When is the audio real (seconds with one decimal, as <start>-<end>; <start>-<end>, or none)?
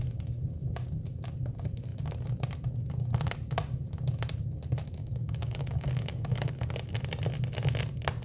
0.0-5.0; 6.5-8.2